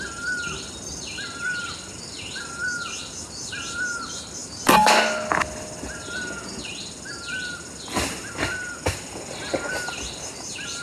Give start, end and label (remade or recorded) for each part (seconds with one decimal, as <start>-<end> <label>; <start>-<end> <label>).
0.0-10.8 recorded